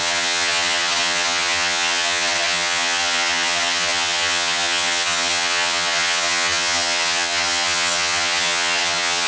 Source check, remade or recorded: remade